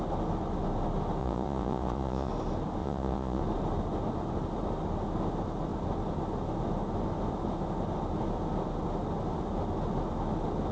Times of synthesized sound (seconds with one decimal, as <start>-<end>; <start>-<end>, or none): 1.2-2.3; 2.8-3.4